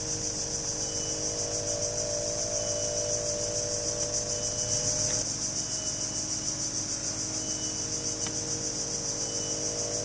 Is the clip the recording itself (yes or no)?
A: yes